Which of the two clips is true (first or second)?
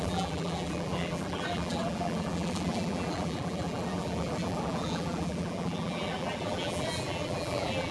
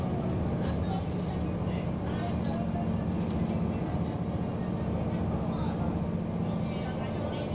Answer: second